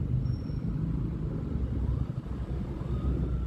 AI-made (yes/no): no